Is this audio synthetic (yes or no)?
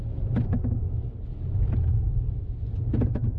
no